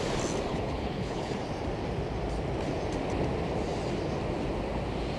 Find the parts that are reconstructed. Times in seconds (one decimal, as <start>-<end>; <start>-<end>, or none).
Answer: 0.5-1.3